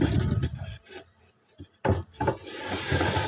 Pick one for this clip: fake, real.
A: real